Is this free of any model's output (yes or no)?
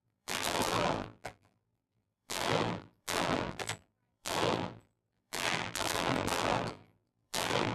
no